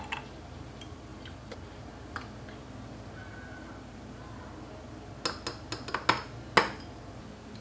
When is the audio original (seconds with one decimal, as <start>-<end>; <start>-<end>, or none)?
0.0-7.6